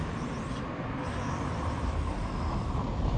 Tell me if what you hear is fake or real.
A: real